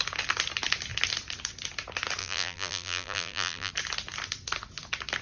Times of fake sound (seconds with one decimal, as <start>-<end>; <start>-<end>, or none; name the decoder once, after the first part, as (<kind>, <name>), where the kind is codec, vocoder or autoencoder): 2.2-3.7 (vocoder, BigVGAN v2)

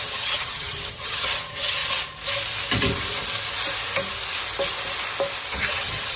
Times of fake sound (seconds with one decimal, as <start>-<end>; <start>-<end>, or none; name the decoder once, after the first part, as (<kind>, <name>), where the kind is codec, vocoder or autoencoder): 0.0-1.8 (vocoder, HiFi-GAN); 5.5-6.2

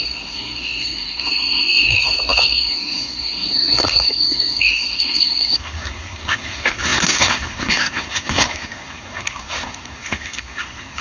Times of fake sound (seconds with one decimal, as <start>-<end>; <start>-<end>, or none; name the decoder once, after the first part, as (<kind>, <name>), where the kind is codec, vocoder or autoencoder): 0.0-11.0 (codec, SNAC)

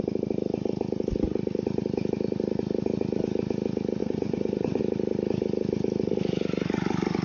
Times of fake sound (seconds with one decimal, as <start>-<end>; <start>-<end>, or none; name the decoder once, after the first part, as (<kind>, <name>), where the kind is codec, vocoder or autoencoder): 4.0-4.8 (vocoder, Vocos)

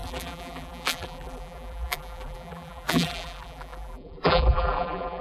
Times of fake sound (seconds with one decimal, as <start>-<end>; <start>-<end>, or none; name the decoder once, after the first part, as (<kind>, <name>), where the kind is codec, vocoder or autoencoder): 0.0-5.2 (vocoder, BigVGAN v2)